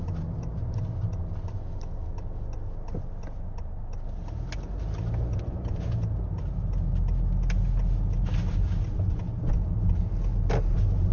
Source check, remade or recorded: recorded